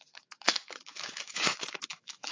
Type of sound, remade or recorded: remade